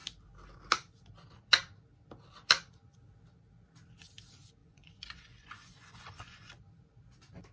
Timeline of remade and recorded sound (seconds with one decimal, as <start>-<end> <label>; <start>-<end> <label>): 0.0-4.6 recorded; 4.6-6.5 remade; 6.5-7.5 recorded